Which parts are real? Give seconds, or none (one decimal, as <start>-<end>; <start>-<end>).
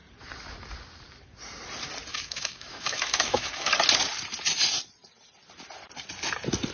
0.0-2.1; 3.7-6.7